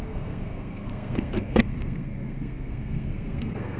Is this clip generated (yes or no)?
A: yes